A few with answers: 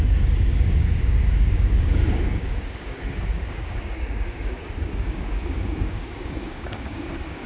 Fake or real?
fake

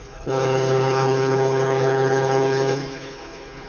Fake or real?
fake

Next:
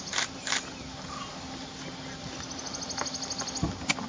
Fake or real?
real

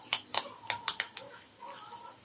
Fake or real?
real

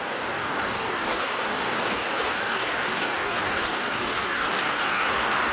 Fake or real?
fake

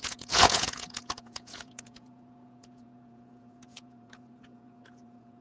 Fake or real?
fake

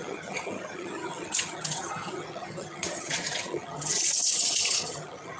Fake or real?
fake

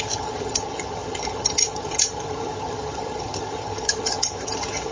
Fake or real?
fake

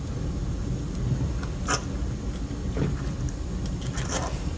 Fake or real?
real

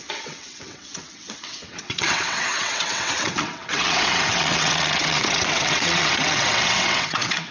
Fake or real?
fake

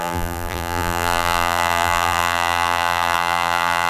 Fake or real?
fake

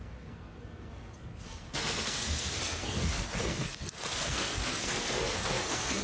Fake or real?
fake